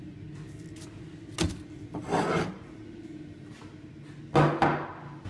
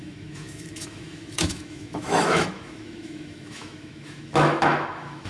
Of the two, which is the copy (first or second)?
second